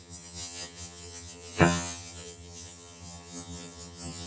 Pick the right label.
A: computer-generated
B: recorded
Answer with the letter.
A